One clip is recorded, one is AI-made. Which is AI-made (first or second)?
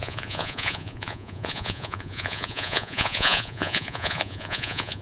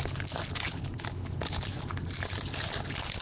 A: first